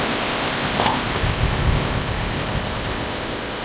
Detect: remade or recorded remade